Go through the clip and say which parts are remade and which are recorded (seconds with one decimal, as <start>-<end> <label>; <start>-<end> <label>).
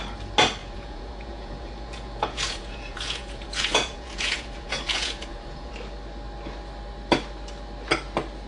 0.0-0.6 recorded; 0.6-5.7 remade; 5.7-8.5 recorded